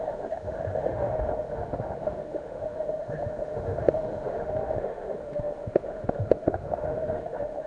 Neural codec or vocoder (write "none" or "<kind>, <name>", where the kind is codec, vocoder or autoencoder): autoencoder, DAC-VAE